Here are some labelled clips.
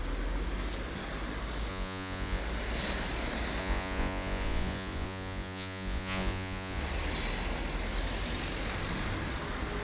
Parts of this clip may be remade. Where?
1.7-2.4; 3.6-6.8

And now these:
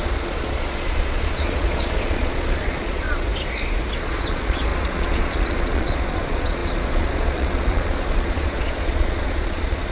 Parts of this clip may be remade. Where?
0.0-3.3; 4.0-9.9

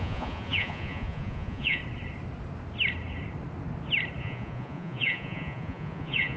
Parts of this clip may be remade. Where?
0.0-1.8; 4.2-6.4

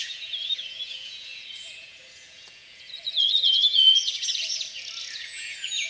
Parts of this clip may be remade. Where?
0.0-5.9

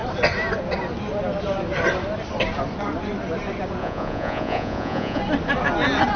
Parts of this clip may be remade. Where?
3.8-5.2

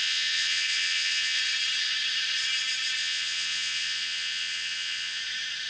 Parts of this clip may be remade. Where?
0.0-1.4; 3.0-5.2